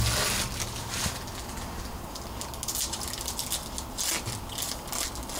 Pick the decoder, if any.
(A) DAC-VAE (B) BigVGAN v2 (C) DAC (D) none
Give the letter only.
D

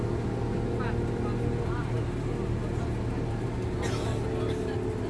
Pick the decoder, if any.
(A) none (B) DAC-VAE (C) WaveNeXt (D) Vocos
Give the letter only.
A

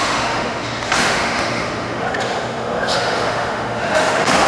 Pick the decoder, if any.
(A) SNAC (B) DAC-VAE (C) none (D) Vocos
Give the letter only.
B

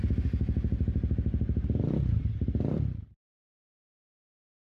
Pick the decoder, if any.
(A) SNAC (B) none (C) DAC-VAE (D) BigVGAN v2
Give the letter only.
B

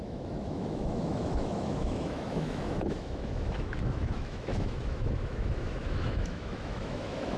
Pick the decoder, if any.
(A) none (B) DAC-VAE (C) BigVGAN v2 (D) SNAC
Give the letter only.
B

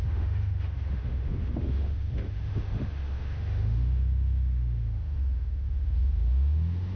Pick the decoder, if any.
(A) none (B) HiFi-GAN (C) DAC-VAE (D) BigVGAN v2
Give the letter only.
C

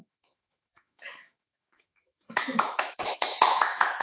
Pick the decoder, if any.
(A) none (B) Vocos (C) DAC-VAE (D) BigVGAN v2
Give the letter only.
C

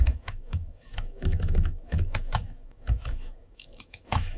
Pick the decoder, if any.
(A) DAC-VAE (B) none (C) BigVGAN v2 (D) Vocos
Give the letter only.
A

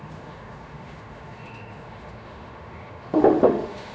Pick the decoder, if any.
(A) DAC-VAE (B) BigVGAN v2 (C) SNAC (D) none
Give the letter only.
A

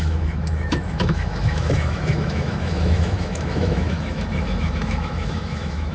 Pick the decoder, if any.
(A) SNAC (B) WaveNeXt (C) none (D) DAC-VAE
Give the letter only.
D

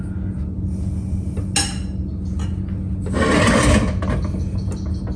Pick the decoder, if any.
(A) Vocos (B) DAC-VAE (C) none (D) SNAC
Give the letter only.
C